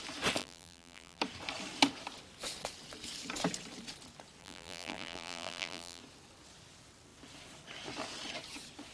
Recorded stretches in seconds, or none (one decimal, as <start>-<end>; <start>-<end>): 0.0-0.4; 1.2-4.4; 6.0-8.9